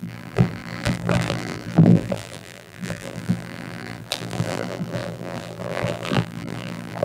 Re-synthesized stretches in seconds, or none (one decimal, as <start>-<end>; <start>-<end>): 0.0-7.0